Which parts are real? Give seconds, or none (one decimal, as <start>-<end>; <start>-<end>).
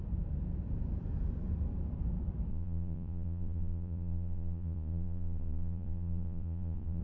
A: 0.0-2.5